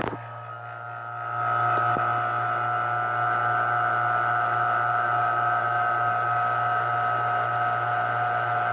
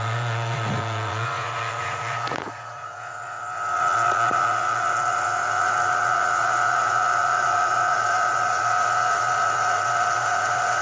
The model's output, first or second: second